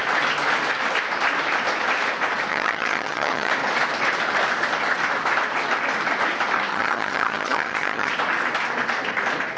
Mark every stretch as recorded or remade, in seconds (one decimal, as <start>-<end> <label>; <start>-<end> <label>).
0.0-2.5 recorded; 2.5-3.5 remade; 3.5-6.7 recorded; 6.7-8.1 remade; 8.1-9.6 recorded